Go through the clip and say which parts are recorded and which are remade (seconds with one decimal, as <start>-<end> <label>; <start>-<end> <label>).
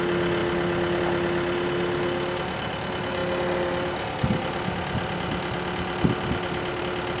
0.0-7.2 recorded